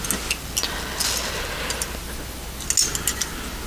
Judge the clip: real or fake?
real